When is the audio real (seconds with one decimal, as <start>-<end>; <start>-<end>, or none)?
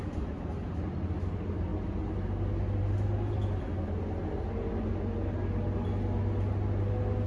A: 0.0-7.3